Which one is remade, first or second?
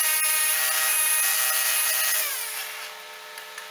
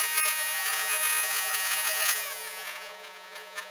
second